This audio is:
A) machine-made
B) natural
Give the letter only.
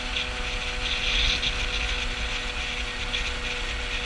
B